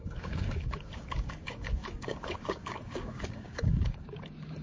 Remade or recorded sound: remade